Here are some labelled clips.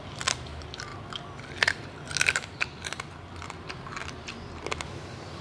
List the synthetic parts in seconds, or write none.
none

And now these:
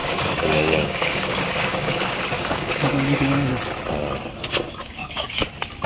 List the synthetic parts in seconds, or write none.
0.0-3.5 (codec, DAC); 4.8-5.4

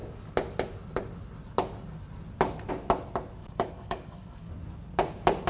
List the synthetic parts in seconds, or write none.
3.4-4.5 (codec, DAC)

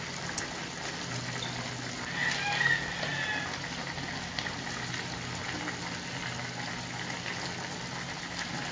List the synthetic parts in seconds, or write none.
none

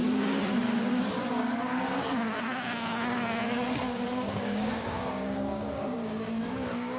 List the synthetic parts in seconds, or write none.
0.0-7.0 (codec, DAC)

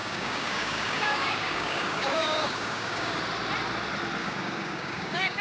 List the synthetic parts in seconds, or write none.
0.0-3.2 (codec, DAC); 4.2-5.4

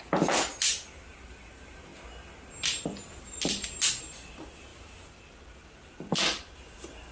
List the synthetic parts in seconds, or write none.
none

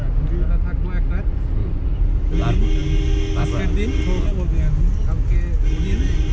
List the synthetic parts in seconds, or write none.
none